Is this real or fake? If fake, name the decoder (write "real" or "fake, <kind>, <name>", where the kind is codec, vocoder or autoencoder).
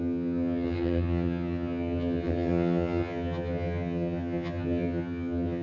fake, vocoder, HiFi-GAN